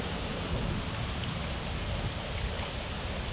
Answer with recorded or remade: recorded